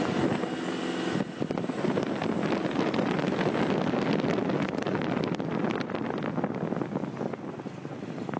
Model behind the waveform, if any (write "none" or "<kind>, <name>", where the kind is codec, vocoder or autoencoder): none